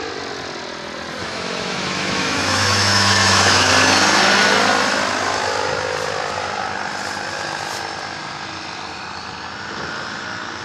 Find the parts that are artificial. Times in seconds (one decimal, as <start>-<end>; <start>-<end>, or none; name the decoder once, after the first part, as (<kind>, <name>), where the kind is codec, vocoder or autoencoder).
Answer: 1.2-3.7 (autoencoder, DAC-VAE)